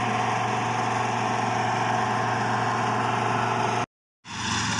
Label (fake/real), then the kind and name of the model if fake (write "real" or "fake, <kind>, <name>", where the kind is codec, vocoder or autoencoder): real